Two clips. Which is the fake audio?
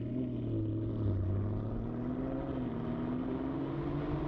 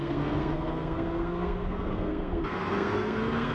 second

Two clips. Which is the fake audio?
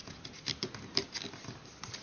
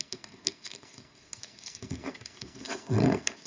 second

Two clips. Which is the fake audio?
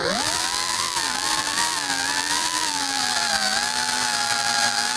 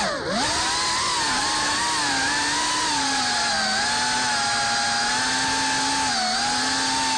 first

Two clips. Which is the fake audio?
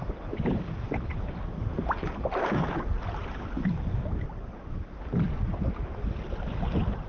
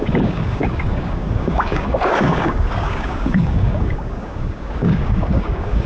second